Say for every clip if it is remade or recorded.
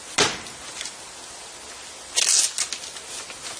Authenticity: recorded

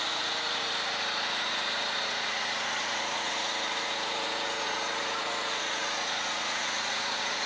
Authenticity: remade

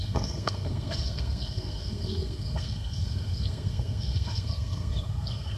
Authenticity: remade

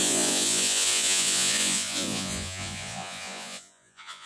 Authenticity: remade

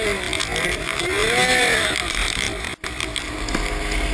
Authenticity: recorded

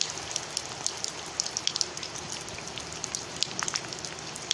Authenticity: recorded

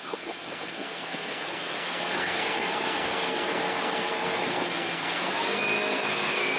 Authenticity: remade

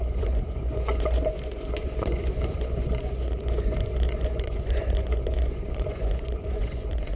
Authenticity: remade